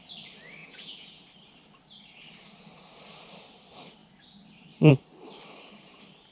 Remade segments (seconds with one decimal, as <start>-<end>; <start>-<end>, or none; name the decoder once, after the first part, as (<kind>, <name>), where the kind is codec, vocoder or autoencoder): 0.6-1.2 (vocoder, Vocos)